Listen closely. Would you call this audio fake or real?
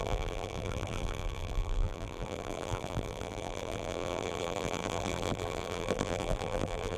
fake